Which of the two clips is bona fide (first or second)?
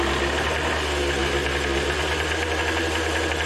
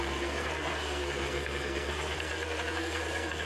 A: first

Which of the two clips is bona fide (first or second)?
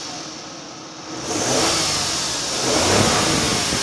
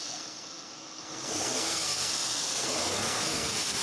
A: first